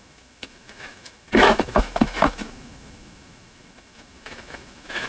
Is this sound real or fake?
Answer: fake